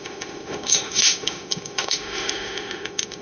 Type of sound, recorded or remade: remade